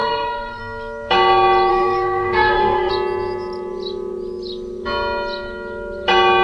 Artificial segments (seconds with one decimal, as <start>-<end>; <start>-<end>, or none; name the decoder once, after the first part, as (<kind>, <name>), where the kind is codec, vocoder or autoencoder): 0.0-0.6 (codec, SNAC); 1.7-2.9